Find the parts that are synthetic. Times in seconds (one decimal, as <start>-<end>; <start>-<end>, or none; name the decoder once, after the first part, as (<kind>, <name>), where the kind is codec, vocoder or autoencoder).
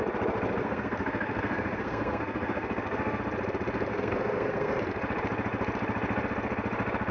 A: 0.6-3.2 (codec, SNAC); 3.9-4.8